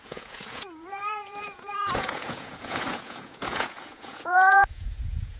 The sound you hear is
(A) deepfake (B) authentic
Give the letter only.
A